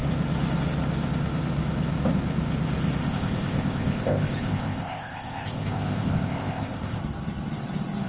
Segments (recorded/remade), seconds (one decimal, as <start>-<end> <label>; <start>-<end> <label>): 0.0-3.1 recorded; 3.1-7.0 remade; 7.0-8.1 recorded